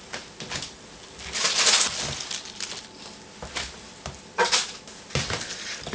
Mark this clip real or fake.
real